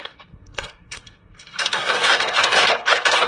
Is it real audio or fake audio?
fake